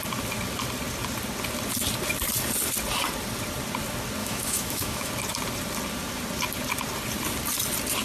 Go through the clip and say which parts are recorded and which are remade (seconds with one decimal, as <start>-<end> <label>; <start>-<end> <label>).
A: 0.0-4.2 recorded; 4.2-5.1 remade; 5.1-8.0 recorded